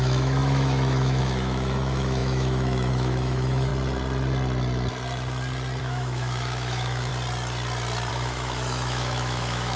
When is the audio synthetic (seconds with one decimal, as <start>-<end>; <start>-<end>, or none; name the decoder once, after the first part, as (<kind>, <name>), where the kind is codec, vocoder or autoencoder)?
0.0-3.7 (autoencoder, DAC-VAE); 5.8-7.1; 8.1-9.8